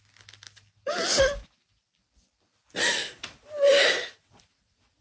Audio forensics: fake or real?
fake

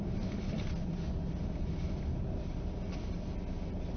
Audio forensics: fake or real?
real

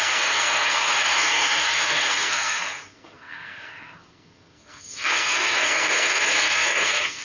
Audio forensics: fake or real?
fake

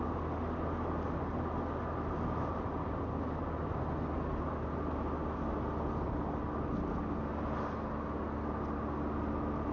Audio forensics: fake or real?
real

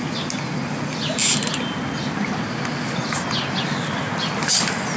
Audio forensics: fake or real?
real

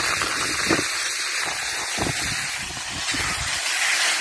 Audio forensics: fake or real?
real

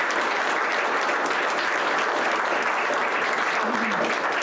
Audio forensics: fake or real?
real